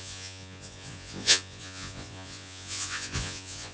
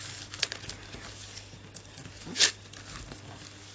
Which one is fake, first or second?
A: first